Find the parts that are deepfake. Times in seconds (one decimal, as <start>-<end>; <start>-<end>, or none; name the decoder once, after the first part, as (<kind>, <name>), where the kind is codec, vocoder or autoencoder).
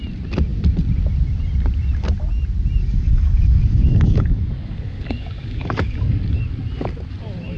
2.8-6.4 (codec, DAC)